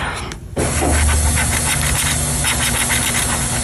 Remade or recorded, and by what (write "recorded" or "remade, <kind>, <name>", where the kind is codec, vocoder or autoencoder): recorded